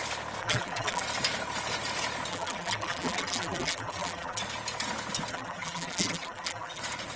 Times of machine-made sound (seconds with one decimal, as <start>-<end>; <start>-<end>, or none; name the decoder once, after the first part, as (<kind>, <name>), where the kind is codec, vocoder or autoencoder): 0.4-1.0 (vocoder, BigVGAN v2); 2.3-4.4; 5.3-6.8